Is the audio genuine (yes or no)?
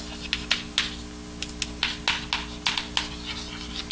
yes